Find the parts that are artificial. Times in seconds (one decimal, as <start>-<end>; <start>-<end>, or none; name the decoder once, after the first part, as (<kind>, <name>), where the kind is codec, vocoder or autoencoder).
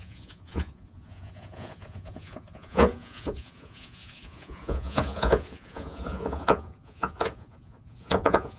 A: 0.0-8.6 (vocoder, Vocos)